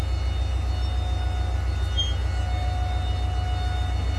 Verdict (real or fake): real